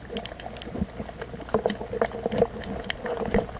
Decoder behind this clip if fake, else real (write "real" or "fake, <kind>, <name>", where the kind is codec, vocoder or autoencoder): real